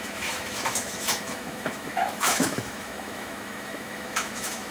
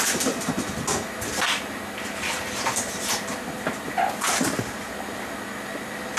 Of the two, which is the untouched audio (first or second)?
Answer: second